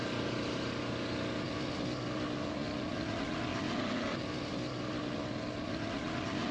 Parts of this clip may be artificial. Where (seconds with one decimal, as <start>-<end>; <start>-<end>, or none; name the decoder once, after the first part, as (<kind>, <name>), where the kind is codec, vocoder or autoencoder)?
none